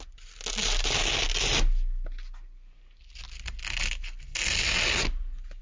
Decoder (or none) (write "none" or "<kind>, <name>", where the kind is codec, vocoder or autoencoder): none